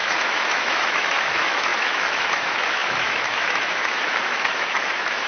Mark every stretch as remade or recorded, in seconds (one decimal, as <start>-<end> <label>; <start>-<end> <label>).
0.0-5.3 remade